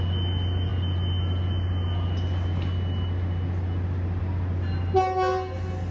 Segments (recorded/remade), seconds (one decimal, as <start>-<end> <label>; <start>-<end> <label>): 0.0-5.9 recorded